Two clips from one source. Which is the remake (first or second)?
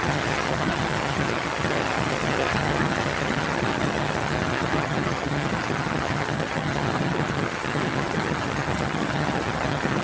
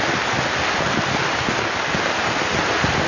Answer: first